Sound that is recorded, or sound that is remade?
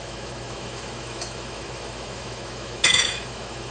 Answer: remade